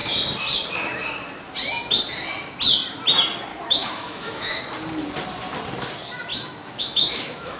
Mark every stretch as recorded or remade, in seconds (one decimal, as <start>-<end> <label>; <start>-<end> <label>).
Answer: 0.0-3.5 recorded; 3.5-4.6 remade; 4.6-6.3 recorded; 6.3-7.6 remade